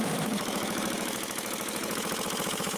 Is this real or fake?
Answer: fake